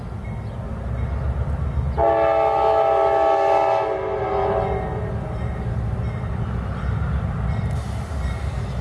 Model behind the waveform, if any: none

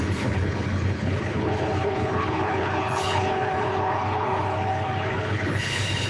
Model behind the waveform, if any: codec, HILCodec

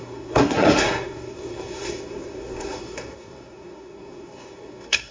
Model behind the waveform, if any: codec, SNAC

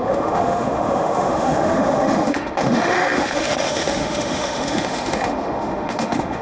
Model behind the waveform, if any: autoencoder, DAC-VAE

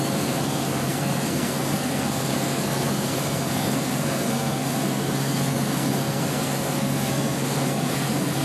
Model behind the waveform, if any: codec, SNAC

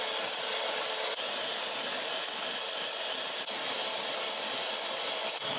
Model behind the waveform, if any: none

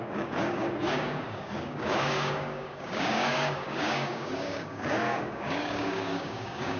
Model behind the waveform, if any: codec, DAC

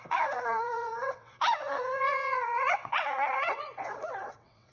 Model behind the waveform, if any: vocoder, WaveNeXt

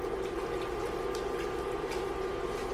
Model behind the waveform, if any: none